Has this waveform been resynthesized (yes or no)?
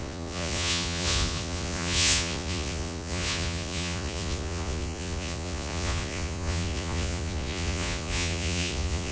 yes